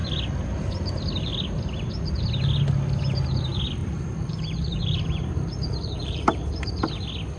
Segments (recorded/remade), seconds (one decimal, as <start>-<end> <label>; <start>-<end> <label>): 0.0-3.8 recorded; 3.8-6.9 remade; 6.9-7.4 recorded